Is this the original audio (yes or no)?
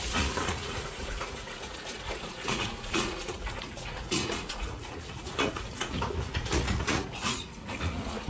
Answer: no